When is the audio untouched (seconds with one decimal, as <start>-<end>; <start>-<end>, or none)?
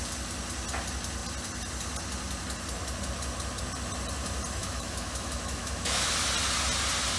0.0-4.6; 6.1-7.2